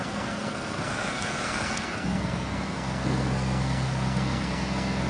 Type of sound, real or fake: fake